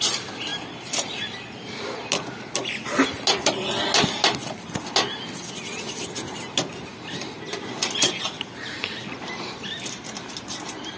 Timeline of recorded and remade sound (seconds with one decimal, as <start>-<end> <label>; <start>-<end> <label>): 0.0-11.0 recorded